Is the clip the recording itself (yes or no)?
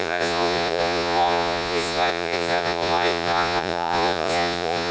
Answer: no